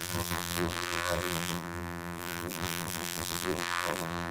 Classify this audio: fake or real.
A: fake